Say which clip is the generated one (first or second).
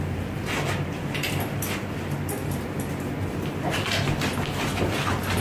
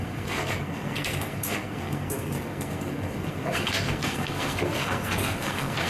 second